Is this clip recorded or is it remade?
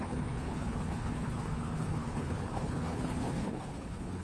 remade